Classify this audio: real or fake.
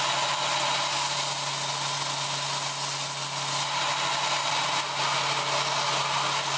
real